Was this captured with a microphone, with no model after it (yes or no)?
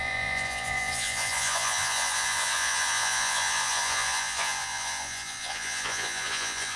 no